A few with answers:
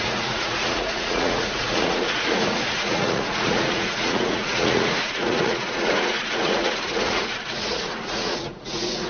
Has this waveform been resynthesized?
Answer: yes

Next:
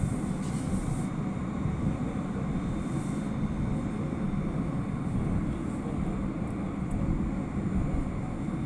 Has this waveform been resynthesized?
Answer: no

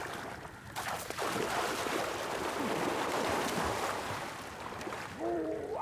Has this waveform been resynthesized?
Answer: yes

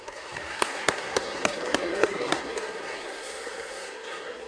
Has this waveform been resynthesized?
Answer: yes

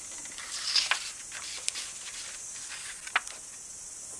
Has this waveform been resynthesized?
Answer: no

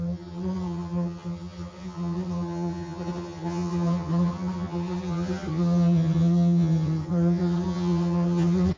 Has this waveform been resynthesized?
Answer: yes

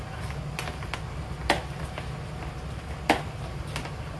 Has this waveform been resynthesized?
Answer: no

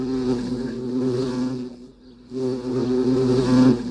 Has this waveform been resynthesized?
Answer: no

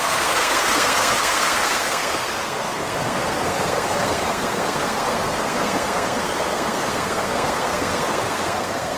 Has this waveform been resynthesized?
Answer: yes